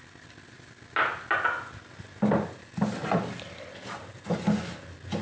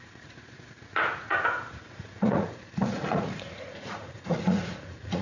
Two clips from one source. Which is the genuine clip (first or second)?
first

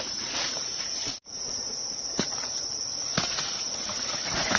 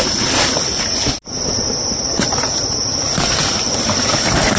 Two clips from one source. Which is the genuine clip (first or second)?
second